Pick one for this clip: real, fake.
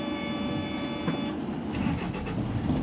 real